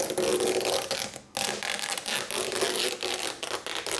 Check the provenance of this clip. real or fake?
real